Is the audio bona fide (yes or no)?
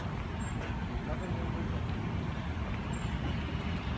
yes